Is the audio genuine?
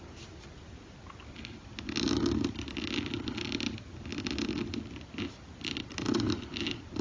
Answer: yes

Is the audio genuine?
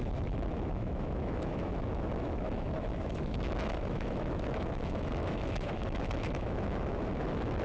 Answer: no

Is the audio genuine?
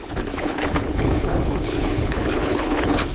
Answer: no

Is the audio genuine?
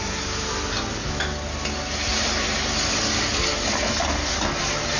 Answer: yes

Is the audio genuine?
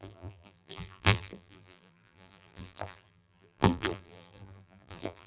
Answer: no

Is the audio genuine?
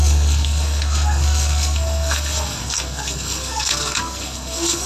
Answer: no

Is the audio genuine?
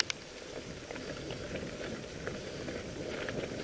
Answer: yes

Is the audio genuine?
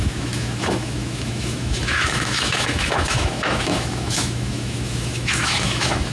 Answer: no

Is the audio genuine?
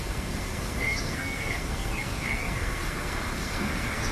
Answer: no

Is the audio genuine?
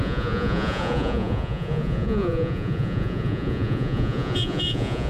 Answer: no